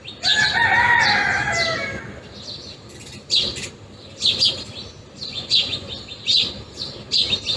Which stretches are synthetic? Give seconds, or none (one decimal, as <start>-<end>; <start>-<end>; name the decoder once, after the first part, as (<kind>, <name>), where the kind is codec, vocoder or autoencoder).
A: 5.3-6.0 (vocoder, Vocos)